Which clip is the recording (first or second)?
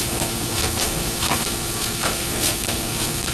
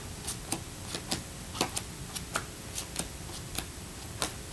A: second